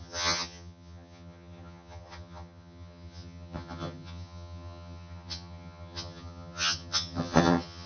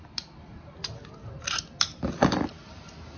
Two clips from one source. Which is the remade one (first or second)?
first